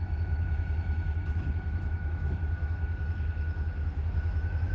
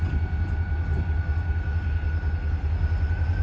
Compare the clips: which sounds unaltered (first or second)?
second